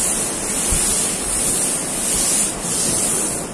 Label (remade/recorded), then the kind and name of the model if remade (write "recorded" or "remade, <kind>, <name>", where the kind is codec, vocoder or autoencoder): recorded